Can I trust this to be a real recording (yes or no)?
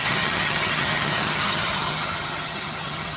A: no